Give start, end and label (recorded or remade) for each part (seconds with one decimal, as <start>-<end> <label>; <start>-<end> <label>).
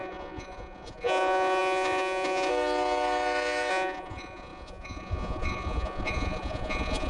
0.0-2.5 remade; 2.5-3.7 recorded; 3.7-7.1 remade